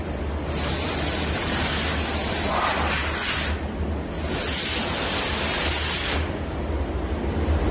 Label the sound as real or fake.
real